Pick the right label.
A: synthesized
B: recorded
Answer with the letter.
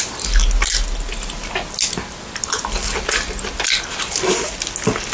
B